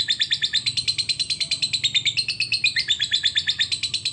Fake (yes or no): no